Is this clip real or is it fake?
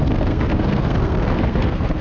fake